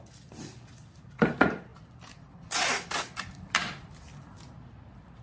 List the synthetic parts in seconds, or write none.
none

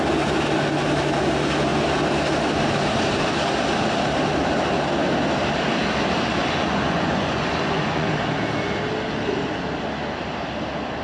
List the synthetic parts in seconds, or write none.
6.4-8.1 (vocoder, Vocos)

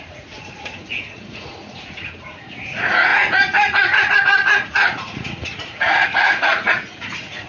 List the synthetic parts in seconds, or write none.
0.0-7.5 (vocoder, Vocos)

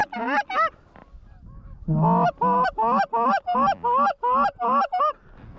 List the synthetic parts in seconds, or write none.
none

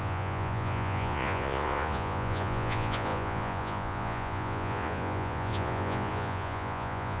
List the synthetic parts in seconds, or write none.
0.0-7.2 (vocoder, Vocos)

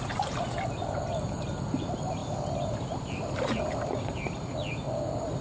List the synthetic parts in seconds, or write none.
none